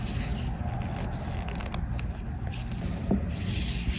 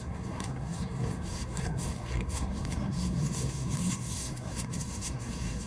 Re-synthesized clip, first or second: second